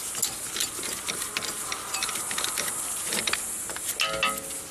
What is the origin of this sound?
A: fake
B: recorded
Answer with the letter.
B